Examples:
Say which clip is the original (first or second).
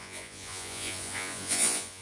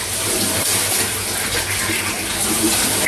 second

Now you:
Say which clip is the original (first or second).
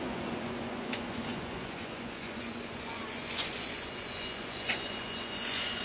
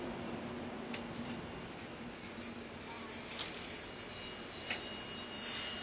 second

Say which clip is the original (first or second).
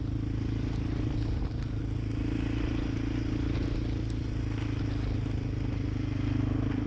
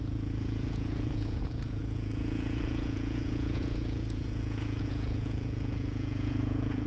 first